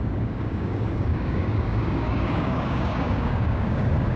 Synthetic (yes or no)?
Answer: yes